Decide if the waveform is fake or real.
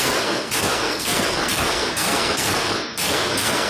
fake